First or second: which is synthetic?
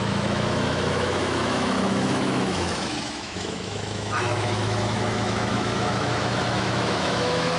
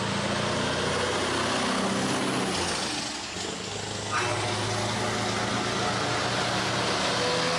first